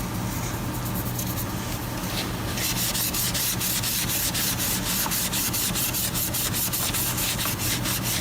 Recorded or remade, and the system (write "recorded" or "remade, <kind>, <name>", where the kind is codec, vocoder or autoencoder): recorded